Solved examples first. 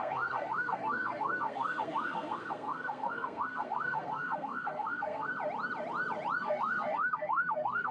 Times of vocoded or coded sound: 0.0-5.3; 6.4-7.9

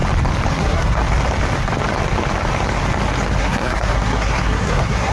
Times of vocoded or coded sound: 0.5-1.0; 3.4-5.1

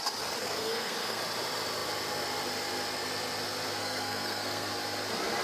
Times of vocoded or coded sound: 0.4-1.2; 3.8-4.7

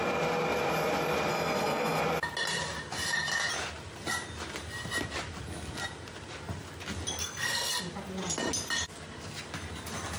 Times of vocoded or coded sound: 1.3-2.0; 7.2-7.7